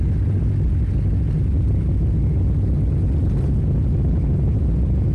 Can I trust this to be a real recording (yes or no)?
yes